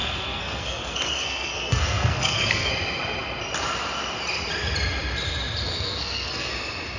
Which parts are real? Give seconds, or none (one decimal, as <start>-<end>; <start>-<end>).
2.7-5.7; 6.5-7.0

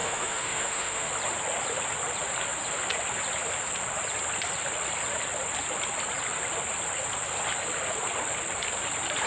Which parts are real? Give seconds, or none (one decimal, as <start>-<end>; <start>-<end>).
1.1-9.3

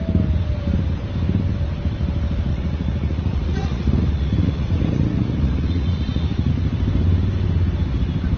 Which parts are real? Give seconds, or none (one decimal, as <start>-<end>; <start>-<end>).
0.0-2.5; 6.5-8.4

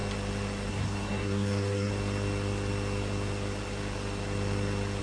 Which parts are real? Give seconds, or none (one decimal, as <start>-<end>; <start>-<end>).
0.0-0.7; 1.9-5.0

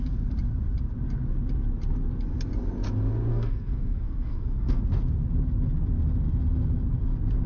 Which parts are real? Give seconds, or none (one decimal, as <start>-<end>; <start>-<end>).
0.0-3.3; 4.8-7.5

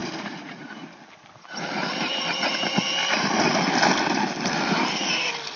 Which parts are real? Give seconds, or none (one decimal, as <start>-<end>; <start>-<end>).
0.7-5.6

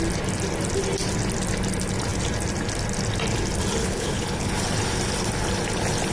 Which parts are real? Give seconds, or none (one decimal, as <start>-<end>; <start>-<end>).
0.0-3.8; 4.5-6.1